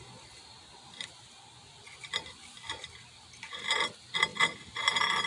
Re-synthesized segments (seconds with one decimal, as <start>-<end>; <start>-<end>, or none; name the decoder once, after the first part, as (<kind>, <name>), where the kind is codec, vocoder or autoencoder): none